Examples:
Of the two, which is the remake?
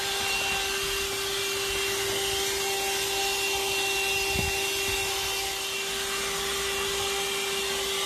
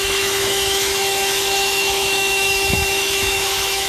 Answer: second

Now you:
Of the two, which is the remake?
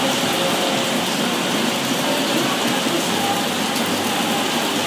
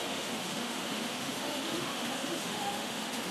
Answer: second